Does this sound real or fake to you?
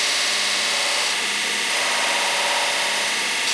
real